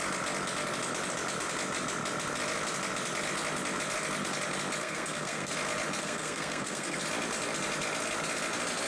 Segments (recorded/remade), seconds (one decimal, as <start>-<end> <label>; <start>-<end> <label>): 0.0-4.8 recorded; 4.8-5.5 remade; 5.5-6.0 recorded; 6.0-7.0 remade; 7.0-8.9 recorded